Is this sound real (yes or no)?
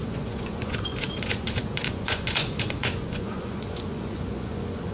no